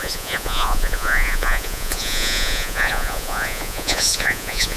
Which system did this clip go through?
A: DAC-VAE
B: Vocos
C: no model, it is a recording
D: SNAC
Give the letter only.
B